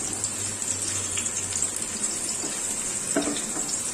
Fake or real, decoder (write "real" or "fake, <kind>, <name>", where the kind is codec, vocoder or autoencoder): real